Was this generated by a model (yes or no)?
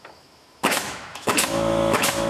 yes